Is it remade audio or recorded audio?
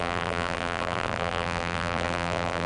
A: remade